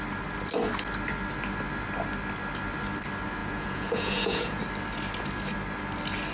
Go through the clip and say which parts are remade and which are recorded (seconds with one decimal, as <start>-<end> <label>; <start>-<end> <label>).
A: 0.0-3.4 recorded; 3.4-4.6 remade; 4.6-6.3 recorded